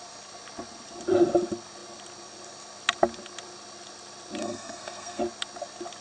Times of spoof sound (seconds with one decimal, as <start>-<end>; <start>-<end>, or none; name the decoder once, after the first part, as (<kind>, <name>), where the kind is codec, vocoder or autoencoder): 4.4-5.2 (codec, SNAC)